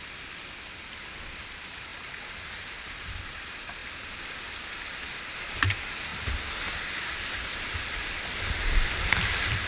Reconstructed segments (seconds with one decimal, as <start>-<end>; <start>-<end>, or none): 0.0-6.1; 8.6-9.7